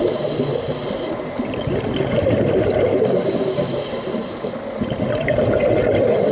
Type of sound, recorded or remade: recorded